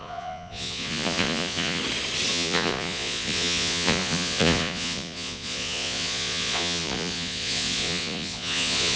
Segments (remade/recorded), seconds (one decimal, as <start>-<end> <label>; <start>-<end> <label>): 0.0-1.8 remade; 1.8-2.3 recorded; 2.3-9.0 remade